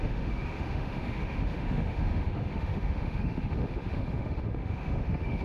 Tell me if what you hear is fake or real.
fake